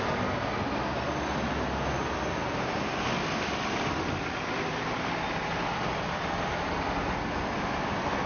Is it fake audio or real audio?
real